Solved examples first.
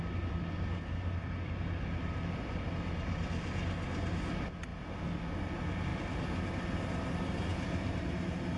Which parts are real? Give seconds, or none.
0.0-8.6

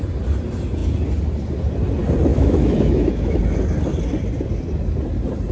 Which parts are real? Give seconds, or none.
0.0-2.3; 3.4-5.5

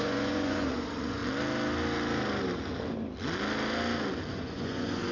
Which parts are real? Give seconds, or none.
1.2-4.3

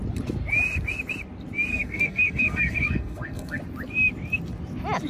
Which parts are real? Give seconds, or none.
0.0-1.7; 3.6-5.1

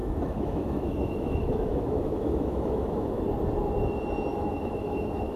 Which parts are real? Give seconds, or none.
3.2-4.3

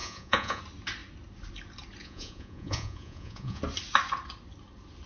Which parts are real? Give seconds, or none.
0.6-2.0; 3.6-5.1

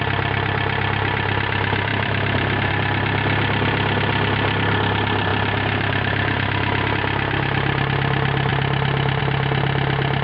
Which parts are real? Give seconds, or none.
0.0-1.9; 2.7-10.2